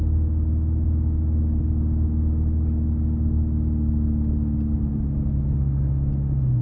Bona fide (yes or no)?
yes